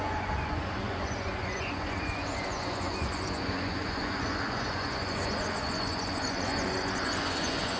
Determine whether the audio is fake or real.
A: fake